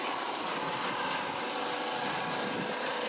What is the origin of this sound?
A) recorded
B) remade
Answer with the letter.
A